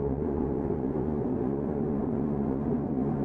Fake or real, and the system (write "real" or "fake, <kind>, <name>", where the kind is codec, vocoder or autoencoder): fake, vocoder, Vocos